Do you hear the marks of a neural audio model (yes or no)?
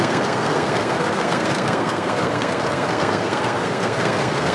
yes